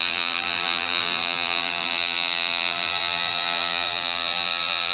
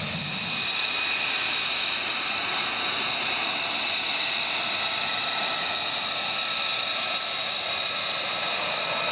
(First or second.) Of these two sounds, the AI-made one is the first